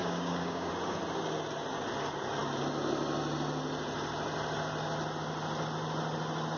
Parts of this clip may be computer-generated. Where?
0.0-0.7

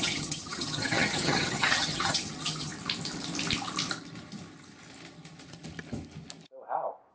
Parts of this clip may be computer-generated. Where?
0.0-2.7

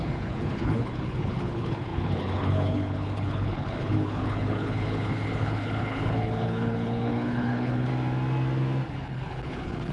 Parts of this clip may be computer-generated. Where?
0.0-7.9; 8.9-9.9

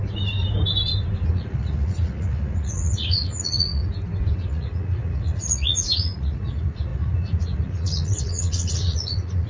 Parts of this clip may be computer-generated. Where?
1.3-3.8; 4.3-9.5

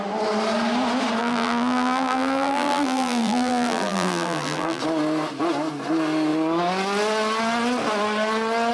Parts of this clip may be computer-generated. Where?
1.2-4.8